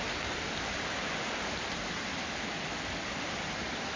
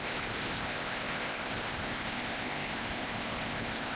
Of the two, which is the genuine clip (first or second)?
first